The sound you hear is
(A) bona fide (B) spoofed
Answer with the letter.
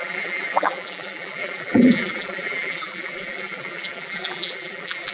B